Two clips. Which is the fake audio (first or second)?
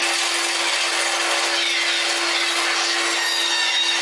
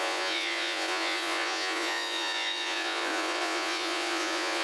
second